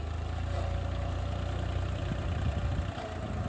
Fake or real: real